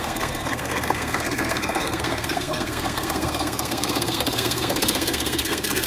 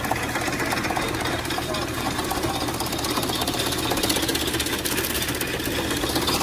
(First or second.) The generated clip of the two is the first